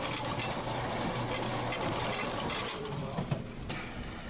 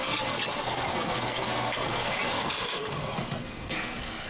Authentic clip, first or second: first